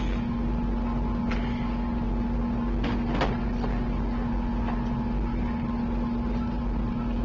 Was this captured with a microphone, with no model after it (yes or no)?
yes